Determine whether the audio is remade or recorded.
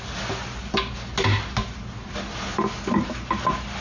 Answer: recorded